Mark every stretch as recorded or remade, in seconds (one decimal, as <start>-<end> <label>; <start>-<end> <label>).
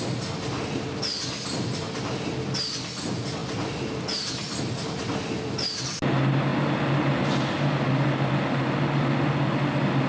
0.0-10.1 recorded